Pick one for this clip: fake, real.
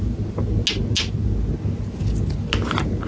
real